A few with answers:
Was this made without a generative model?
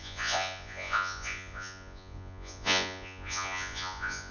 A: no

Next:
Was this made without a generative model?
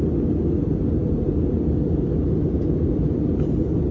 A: yes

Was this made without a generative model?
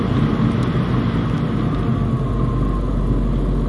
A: yes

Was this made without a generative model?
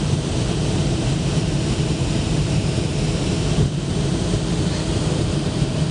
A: no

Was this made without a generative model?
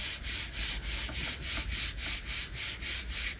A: yes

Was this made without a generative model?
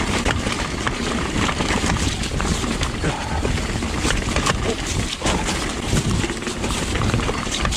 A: no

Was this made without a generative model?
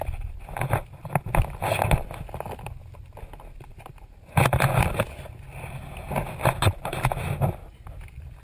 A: yes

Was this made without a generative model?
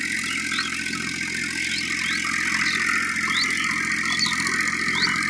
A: yes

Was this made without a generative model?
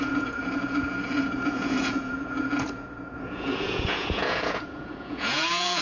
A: no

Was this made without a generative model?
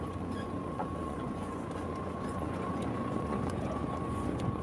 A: no